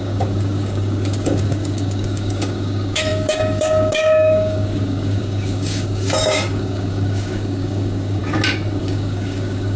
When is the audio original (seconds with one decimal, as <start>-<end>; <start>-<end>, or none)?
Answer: 8.2-8.8